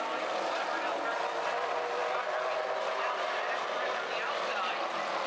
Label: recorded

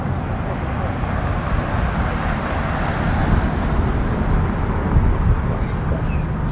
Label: recorded